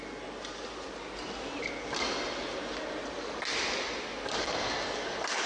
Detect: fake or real real